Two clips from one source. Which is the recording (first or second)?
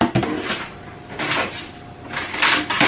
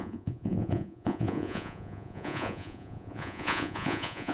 first